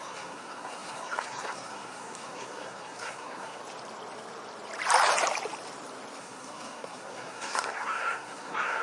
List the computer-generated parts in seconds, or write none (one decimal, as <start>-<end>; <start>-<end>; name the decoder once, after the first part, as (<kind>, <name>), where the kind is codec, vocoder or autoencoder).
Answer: 0.0-3.6 (codec, SNAC); 6.2-8.8